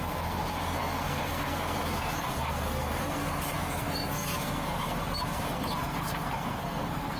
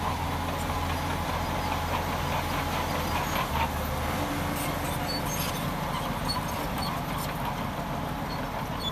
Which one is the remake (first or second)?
first